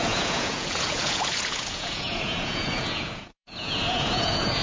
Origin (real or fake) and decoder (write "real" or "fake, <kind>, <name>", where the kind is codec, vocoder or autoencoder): fake, vocoder, Vocos